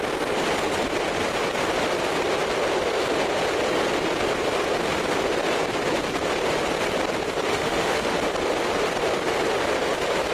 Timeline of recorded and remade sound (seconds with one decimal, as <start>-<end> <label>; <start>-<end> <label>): 0.0-7.5 recorded; 7.5-8.1 remade; 8.1-10.3 recorded